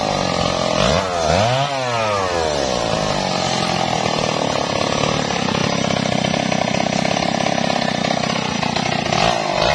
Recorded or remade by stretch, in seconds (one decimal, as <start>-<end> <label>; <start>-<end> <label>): 0.0-9.7 recorded